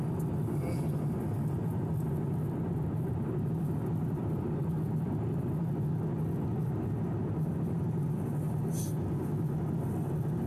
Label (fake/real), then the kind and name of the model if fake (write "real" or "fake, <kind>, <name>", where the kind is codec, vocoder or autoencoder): real